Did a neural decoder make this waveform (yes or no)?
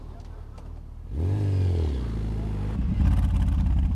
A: no